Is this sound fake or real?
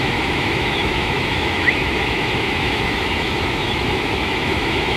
fake